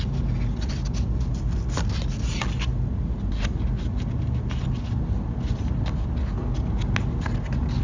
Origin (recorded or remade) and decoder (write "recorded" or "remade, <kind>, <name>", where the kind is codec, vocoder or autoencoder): recorded